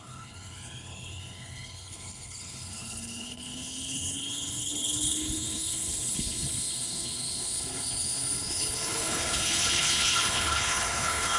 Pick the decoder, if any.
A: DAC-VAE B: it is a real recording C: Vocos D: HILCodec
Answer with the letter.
D